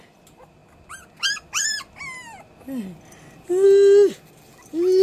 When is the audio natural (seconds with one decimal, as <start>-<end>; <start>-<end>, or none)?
0.0-5.0